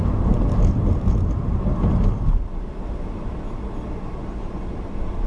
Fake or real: real